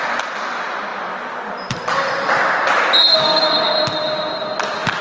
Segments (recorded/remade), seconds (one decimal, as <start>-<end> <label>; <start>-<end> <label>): 0.0-3.0 recorded; 3.0-3.5 remade; 3.5-5.0 recorded